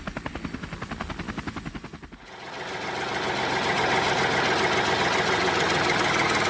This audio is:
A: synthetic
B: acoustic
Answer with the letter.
B